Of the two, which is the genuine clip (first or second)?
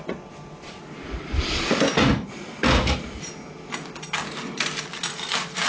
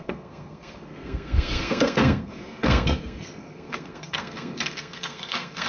first